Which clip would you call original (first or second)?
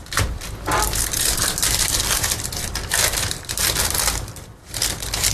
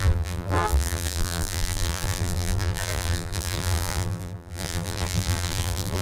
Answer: first